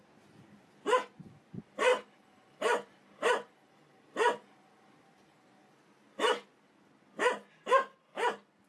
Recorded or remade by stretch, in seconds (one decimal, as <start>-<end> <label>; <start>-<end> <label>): 0.0-1.9 recorded; 1.9-5.8 remade; 5.8-8.7 recorded

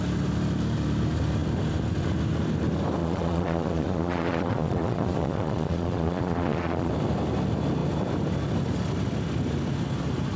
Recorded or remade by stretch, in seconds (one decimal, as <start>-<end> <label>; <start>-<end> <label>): 0.0-3.0 recorded; 3.0-6.9 remade; 6.9-10.4 recorded

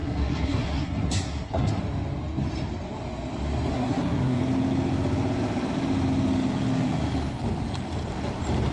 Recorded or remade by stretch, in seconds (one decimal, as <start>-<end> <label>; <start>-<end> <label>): 0.0-1.8 remade; 1.8-3.7 recorded; 3.7-4.4 remade; 4.4-8.7 recorded

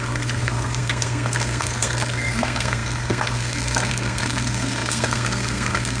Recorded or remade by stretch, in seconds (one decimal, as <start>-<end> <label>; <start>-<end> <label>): 0.0-6.0 remade

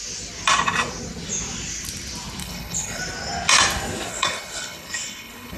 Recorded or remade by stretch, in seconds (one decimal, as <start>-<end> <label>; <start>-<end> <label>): 0.0-2.4 recorded; 2.4-3.0 remade; 3.0-4.1 recorded; 4.1-5.6 remade

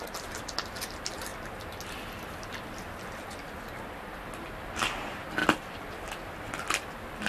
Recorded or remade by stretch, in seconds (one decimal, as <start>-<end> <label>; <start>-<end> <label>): 0.0-7.3 recorded

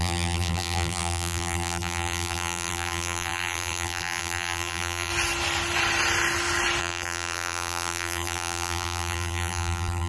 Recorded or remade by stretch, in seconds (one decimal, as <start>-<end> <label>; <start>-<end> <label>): 0.0-5.1 remade; 5.1-6.8 recorded; 6.8-10.1 remade

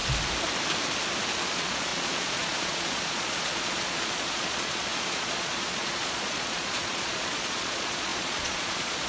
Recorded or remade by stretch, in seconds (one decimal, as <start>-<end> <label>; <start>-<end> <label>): 0.0-1.4 recorded; 1.4-9.1 remade